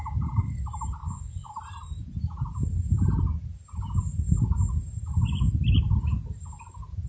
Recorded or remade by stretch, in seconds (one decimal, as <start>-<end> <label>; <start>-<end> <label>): 0.0-1.0 recorded; 1.0-1.5 remade; 1.5-7.1 recorded